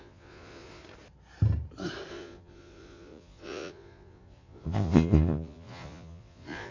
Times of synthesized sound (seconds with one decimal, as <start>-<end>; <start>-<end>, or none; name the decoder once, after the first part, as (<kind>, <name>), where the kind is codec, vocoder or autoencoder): 0.0-0.8 (vocoder, Vocos); 2.1-6.7